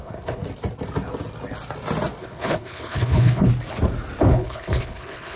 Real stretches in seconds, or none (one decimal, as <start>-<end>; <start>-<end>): 0.4-2.2; 3.5-4.3